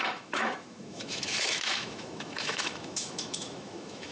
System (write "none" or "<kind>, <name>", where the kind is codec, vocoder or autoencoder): autoencoder, DAC-VAE